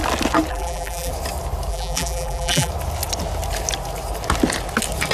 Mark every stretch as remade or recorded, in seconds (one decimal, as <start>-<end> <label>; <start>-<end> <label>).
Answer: 0.0-0.5 recorded; 0.5-1.1 remade; 1.1-1.7 recorded; 1.7-2.7 remade; 2.7-5.1 recorded